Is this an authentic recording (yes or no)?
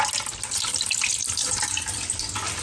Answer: yes